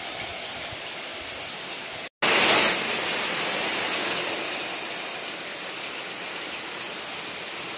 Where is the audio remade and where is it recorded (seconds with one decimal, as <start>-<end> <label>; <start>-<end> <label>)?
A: 0.0-7.8 recorded